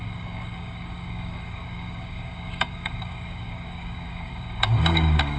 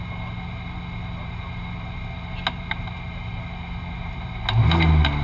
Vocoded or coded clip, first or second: first